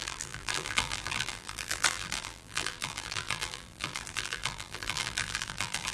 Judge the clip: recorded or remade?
remade